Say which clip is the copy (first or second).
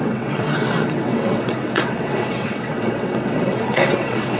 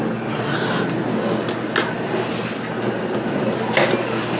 first